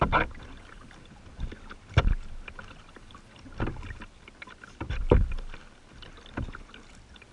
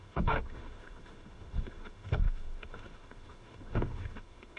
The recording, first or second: first